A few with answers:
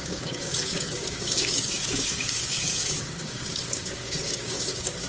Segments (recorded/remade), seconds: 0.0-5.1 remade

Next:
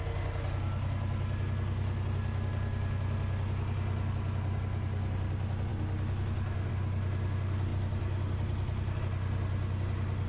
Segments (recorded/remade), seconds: 0.0-10.3 recorded

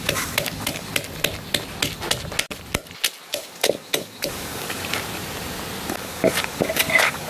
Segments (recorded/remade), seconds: 0.0-0.9 remade; 0.9-3.3 recorded; 3.3-4.8 remade; 4.8-5.9 recorded; 5.9-7.3 remade

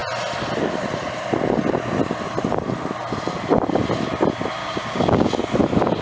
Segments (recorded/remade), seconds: 0.0-4.6 recorded; 4.6-5.3 remade; 5.3-6.0 recorded

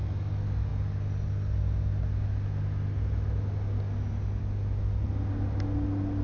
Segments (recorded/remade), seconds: 0.0-6.2 recorded

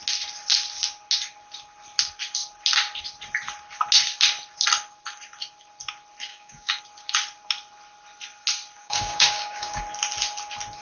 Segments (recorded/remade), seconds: 0.0-6.3 recorded; 6.3-6.8 remade; 6.8-8.8 recorded; 8.8-9.8 remade; 9.8-10.8 recorded

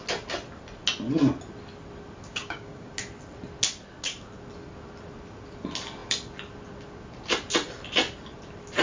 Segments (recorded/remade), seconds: 0.0-2.3 recorded; 2.3-2.9 remade; 2.9-8.8 recorded

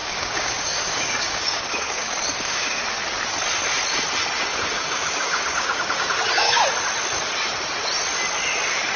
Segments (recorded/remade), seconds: 0.0-2.8 remade; 2.8-4.5 recorded; 4.5-6.7 remade; 6.7-9.0 recorded